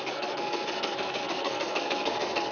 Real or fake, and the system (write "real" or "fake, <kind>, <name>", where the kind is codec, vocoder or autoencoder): fake, codec, SNAC